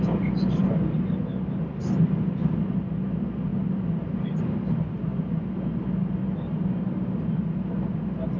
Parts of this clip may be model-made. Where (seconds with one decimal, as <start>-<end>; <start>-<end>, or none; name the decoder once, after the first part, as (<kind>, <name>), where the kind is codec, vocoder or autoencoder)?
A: none